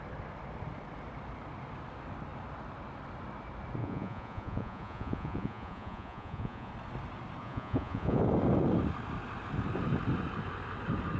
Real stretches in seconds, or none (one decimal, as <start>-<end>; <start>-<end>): 0.0-3.8; 6.7-7.4; 8.2-11.2

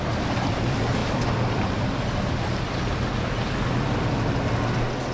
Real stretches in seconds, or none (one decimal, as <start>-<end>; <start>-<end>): 0.0-1.0; 1.7-5.1

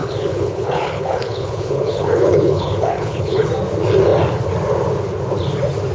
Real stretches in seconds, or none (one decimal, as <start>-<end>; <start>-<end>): 3.5-5.9